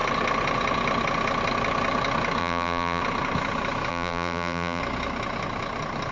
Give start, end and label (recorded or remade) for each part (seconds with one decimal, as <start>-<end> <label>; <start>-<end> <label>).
0.0-2.4 recorded; 2.4-3.0 remade; 3.0-3.9 recorded; 3.9-4.8 remade; 4.8-6.1 recorded